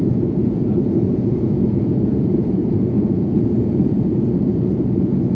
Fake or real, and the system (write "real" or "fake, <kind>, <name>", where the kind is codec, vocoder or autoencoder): fake, vocoder, Vocos